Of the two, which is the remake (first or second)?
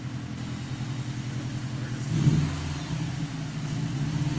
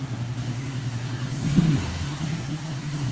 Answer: second